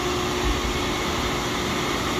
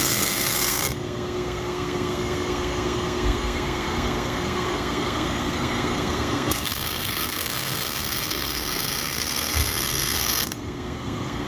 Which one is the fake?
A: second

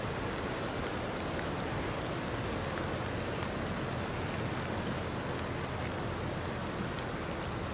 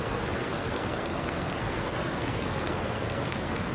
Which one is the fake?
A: second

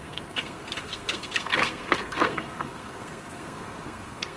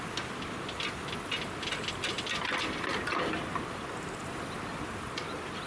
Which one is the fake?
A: first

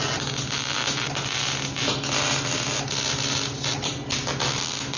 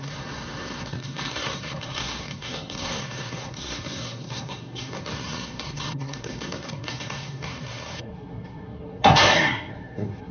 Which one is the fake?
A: second